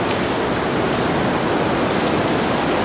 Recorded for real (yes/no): yes